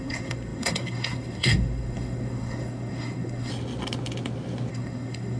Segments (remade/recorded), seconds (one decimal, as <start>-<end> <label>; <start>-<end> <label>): 0.0-3.5 remade; 3.5-4.7 recorded; 4.7-5.4 remade